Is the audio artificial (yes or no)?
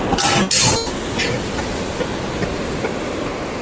no